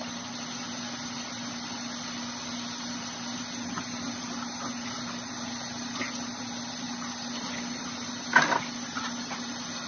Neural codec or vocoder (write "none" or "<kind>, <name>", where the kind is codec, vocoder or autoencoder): none